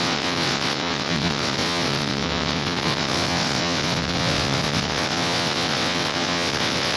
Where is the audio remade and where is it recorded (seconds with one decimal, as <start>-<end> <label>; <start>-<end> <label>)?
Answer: 0.0-7.0 remade